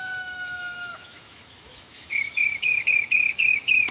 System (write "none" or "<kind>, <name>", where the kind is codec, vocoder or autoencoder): autoencoder, DAC-VAE